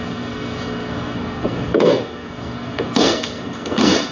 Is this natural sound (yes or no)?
no